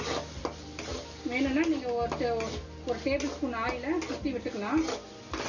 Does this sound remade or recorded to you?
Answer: recorded